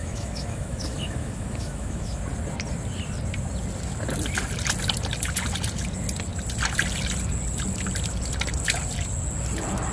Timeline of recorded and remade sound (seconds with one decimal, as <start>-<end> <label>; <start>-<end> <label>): 0.0-2.2 remade; 2.2-9.9 recorded